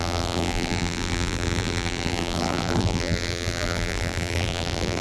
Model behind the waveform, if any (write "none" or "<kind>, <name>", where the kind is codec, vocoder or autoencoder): vocoder, BigVGAN v2